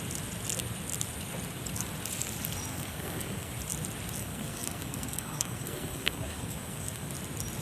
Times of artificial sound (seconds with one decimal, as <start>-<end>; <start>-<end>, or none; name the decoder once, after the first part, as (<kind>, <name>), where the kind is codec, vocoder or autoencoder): 2.7-3.5 (codec, SNAC); 4.2-7.1